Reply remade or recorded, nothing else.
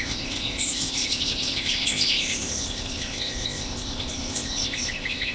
remade